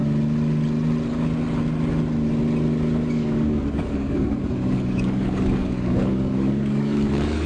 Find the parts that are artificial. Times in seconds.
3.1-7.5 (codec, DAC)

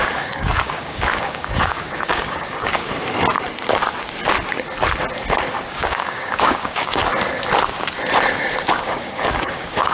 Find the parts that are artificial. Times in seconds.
0.0-2.8 (codec, DAC); 5.7-7.0; 8.7-9.9

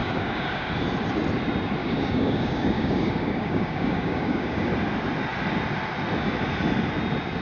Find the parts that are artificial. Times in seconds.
0.0-0.7 (codec, DAC); 1.8-4.7

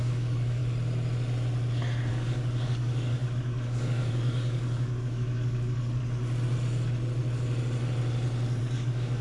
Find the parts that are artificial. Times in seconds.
0.0-0.6 (codec, DAC); 2.1-6.0; 8.6-9.2

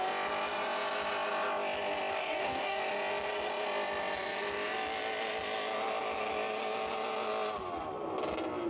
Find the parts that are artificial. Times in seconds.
2.1-2.8 (codec, DAC)

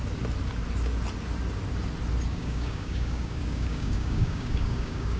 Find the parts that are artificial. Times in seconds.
2.3-5.2 (codec, DAC)